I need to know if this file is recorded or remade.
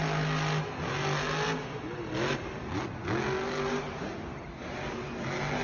recorded